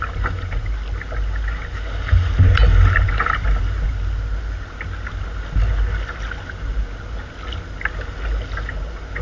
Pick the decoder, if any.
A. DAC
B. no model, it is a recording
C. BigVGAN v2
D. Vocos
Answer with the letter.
B